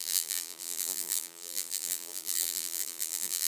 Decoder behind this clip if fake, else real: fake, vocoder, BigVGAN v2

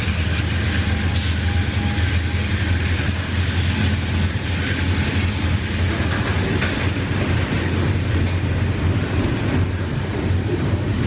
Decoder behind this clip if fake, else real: real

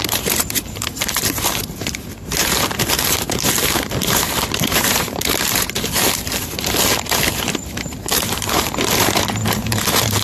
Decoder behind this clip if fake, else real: fake, vocoder, BigVGAN v2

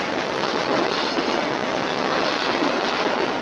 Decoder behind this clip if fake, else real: fake, vocoder, WaveNeXt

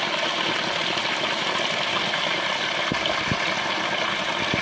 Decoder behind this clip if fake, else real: real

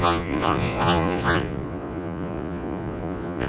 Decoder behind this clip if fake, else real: fake, vocoder, Vocos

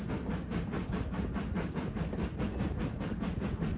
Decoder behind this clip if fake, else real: real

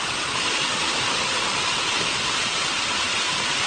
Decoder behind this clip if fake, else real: real